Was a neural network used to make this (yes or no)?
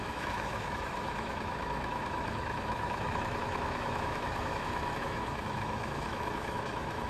yes